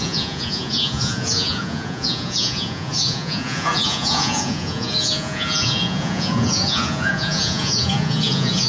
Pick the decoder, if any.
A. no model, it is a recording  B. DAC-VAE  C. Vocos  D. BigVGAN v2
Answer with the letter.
C